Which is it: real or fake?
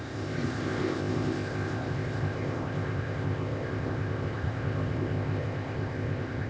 fake